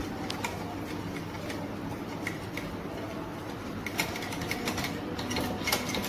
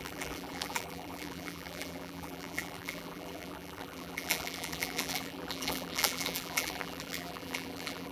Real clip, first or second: first